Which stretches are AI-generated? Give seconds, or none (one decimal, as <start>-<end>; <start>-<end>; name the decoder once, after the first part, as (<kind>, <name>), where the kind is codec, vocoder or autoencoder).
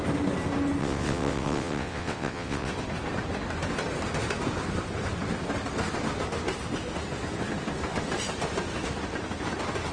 0.8-2.7 (vocoder, WaveNeXt)